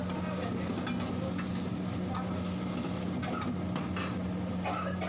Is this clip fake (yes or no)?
no